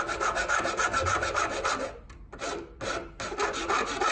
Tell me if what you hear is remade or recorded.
recorded